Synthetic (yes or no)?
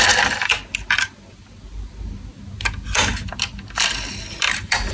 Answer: no